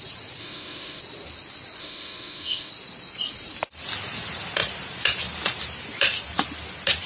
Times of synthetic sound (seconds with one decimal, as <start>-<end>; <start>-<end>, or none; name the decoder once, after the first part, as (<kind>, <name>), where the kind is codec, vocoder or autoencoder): 0.4-1.0 (autoencoder, DAC-VAE); 1.8-2.7